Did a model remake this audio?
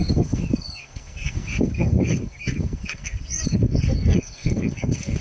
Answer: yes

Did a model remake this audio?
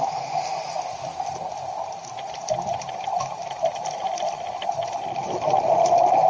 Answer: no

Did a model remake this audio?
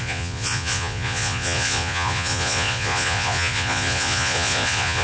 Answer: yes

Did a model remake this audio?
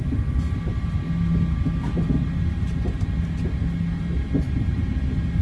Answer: no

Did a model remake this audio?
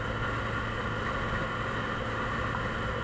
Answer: no